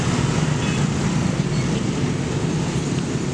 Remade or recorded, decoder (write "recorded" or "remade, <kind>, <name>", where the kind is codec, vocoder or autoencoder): recorded